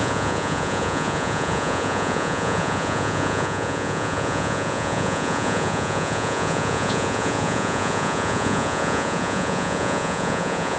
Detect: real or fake fake